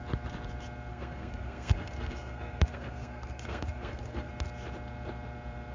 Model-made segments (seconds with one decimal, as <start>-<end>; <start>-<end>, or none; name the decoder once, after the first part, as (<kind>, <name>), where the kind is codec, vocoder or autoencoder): 0.9-4.3 (codec, SNAC)